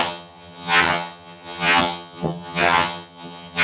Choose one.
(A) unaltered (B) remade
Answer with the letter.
B